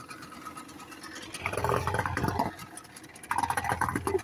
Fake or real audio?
real